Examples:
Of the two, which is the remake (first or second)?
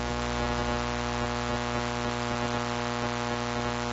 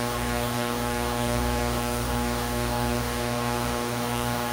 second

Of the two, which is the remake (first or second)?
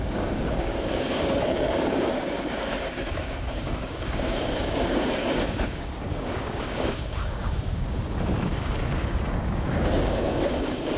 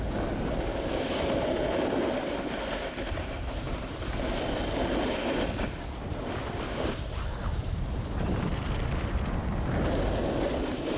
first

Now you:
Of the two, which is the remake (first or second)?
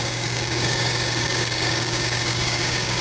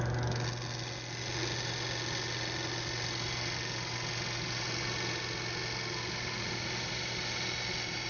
first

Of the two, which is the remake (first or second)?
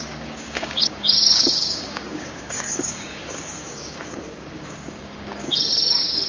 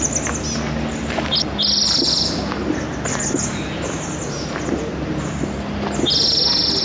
first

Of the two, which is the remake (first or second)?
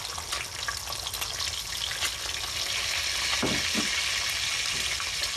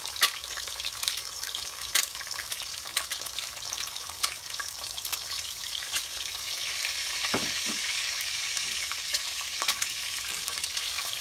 second